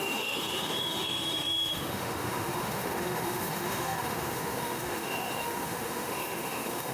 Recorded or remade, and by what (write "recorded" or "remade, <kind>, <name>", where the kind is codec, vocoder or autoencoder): remade, autoencoder, DAC-VAE